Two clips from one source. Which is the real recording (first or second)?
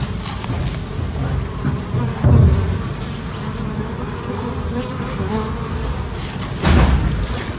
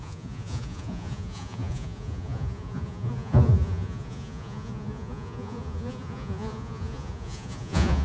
first